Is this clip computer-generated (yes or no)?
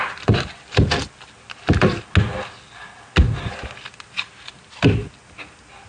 no